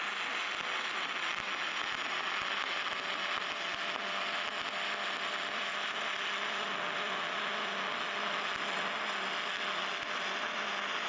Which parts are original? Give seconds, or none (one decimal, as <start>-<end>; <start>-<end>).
0.0-11.1